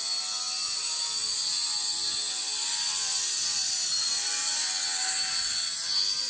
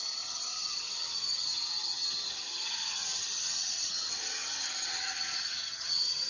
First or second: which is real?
first